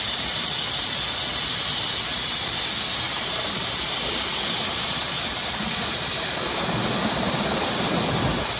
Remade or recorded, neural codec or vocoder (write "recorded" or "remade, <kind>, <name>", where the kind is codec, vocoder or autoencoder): recorded